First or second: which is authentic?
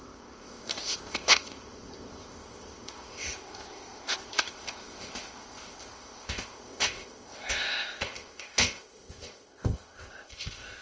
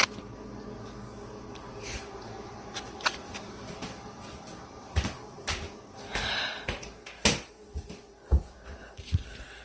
second